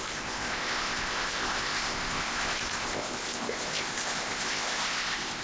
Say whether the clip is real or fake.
fake